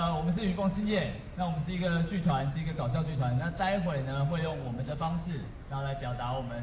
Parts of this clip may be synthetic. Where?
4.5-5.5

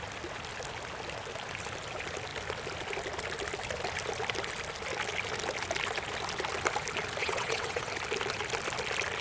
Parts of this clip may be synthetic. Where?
7.2-7.9

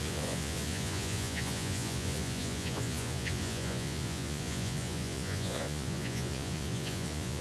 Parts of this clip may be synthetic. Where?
0.0-7.4